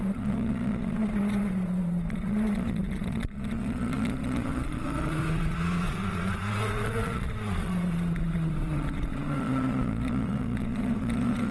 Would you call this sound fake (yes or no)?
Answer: yes